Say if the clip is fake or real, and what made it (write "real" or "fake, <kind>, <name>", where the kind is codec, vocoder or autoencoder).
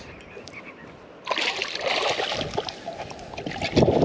real